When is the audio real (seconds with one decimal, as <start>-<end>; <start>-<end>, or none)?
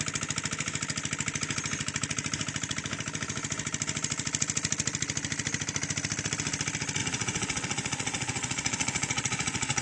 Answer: 0.0-7.0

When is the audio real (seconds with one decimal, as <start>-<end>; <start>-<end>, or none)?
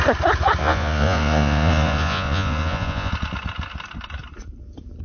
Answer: 0.0-0.6; 3.1-5.0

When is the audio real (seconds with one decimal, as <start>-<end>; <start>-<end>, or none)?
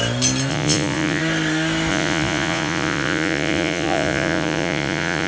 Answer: 0.0-0.5; 1.2-1.9